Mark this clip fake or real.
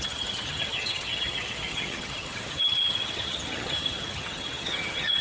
fake